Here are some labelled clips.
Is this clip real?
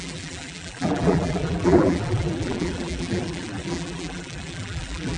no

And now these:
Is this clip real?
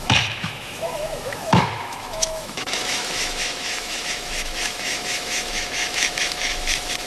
no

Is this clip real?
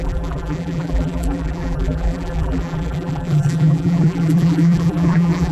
no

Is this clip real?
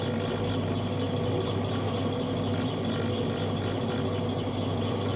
yes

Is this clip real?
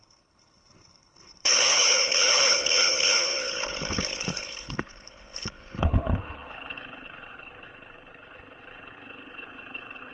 no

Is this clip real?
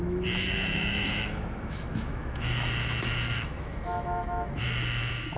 no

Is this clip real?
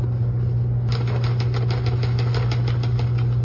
yes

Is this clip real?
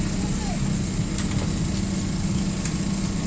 yes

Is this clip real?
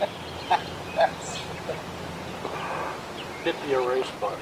yes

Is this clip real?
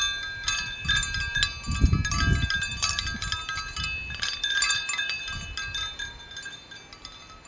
yes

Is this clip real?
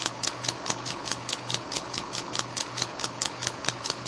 no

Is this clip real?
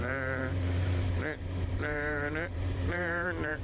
no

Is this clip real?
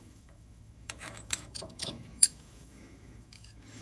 no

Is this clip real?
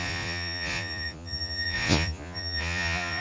no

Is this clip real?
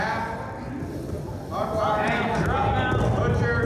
yes